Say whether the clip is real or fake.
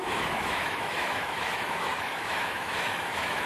fake